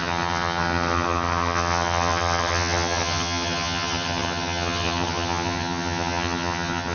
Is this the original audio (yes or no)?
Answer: no